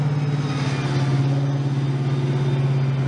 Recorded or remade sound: recorded